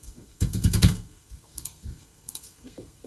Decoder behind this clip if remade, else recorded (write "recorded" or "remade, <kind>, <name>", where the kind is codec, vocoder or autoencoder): remade, codec, SNAC